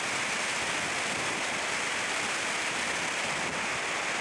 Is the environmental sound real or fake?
real